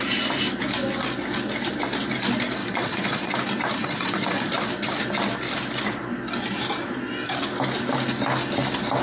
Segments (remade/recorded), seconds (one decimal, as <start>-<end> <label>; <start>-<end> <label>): 0.0-2.6 recorded; 2.6-3.3 remade; 3.3-3.8 recorded; 3.8-4.5 remade; 4.5-9.0 recorded